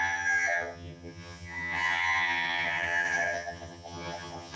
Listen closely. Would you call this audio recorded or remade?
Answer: remade